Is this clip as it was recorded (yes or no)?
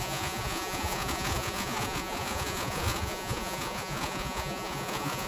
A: no